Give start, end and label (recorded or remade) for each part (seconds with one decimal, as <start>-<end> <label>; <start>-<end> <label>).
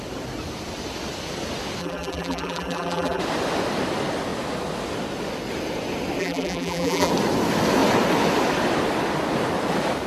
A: 0.0-1.8 recorded; 1.8-3.2 remade; 3.2-6.2 recorded; 6.2-7.1 remade; 7.1-10.1 recorded